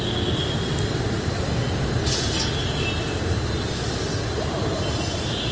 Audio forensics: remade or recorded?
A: recorded